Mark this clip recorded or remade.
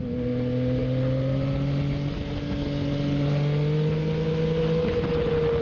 recorded